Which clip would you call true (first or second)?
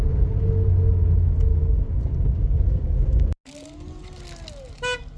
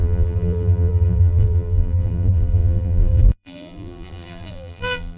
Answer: first